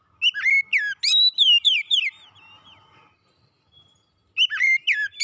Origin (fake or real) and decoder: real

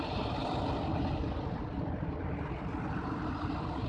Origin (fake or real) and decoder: real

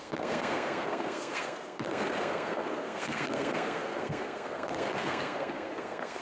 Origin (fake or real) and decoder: fake, codec, SNAC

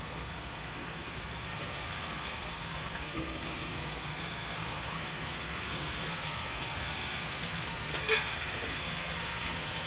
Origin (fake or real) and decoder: fake, codec, SNAC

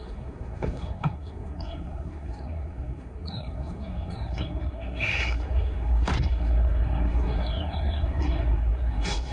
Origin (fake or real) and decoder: fake, codec, SNAC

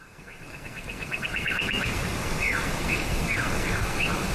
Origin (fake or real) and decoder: fake, codec, SNAC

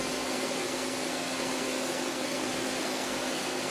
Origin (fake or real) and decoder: fake, codec, SNAC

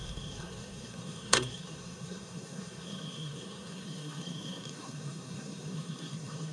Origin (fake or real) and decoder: fake, codec, SNAC